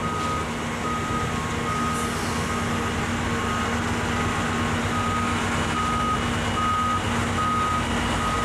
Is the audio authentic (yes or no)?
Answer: yes